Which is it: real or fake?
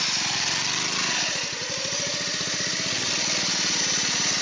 real